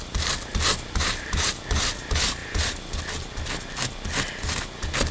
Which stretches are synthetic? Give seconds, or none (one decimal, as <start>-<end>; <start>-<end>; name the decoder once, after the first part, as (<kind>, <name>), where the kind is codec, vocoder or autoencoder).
0.5-1.5 (vocoder, BigVGAN v2)